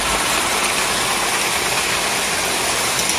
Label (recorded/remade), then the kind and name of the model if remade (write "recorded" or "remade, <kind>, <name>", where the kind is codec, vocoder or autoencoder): recorded